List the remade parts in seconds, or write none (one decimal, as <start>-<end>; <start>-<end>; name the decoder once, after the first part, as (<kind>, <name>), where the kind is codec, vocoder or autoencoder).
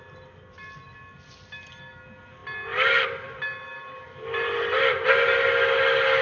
none